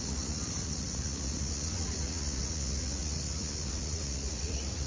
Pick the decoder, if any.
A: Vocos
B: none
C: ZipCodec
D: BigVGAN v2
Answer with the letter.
A